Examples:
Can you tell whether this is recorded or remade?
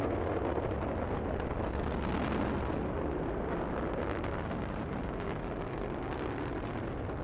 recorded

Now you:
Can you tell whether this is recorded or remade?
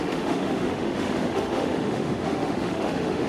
remade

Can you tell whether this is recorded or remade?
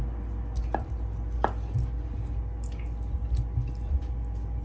recorded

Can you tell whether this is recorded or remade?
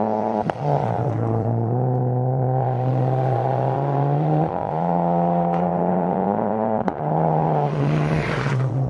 remade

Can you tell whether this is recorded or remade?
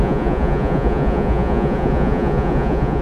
remade